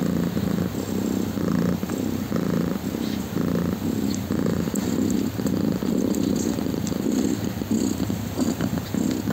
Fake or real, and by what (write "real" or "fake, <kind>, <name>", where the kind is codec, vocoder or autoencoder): fake, vocoder, BigVGAN v2